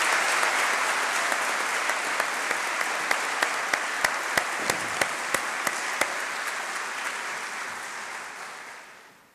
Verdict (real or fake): real